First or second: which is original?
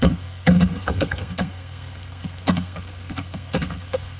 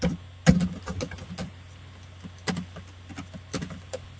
second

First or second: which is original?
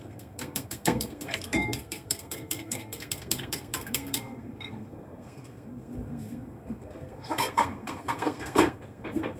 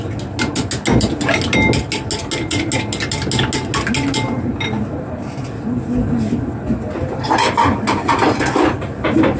second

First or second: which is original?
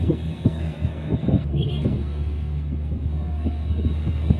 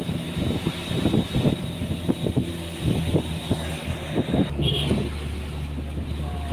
second